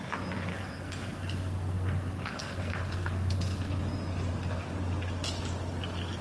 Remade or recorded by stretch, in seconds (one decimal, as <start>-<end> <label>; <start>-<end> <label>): 0.0-0.5 recorded; 0.5-3.7 remade; 3.7-6.2 recorded

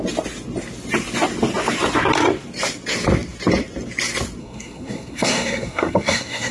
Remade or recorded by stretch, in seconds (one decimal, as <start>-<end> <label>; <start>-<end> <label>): 0.0-4.4 recorded; 4.4-6.5 remade